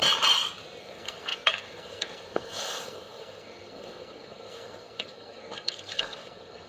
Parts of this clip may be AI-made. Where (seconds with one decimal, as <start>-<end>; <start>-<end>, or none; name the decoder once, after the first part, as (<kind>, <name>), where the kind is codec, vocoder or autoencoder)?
0.8-6.7 (codec, SNAC)